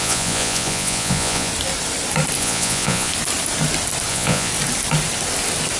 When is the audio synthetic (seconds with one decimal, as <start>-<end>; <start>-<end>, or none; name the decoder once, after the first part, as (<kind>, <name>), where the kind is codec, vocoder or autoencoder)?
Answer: 0.0-1.5 (vocoder, Vocos); 2.4-3.1; 4.1-4.5

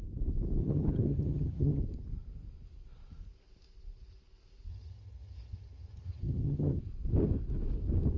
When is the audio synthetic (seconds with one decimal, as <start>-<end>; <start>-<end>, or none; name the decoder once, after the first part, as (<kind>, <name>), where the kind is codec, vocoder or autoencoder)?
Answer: 0.6-1.8 (vocoder, HiFi-GAN); 4.7-6.8

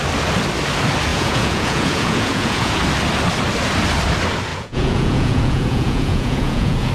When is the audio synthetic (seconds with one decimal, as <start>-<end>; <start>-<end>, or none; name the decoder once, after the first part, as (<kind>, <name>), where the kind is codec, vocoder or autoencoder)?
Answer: 1.1-2.8 (vocoder, Vocos); 4.5-6.9

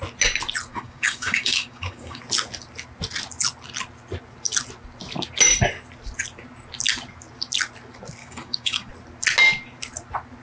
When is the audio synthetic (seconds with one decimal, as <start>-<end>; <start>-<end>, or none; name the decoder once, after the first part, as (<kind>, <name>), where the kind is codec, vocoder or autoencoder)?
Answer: 0.7-2.2 (codec, DAC); 8.2-8.9

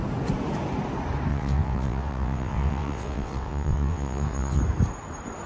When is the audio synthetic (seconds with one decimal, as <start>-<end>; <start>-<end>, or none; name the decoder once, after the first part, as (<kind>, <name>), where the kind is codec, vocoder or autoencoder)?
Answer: 1.3-4.6 (vocoder, WaveNeXt)

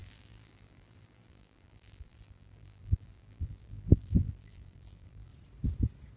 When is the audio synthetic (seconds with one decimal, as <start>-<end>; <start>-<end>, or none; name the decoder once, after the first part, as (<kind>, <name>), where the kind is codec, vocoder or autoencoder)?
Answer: 0.0-5.3 (vocoder, BigVGAN v2)